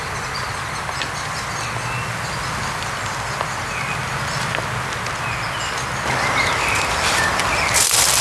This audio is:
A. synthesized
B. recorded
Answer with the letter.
B